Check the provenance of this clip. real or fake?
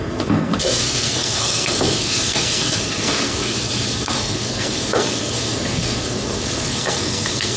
fake